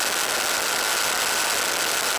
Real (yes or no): yes